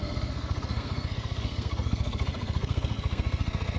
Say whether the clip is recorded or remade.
remade